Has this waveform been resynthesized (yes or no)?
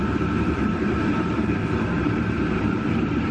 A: yes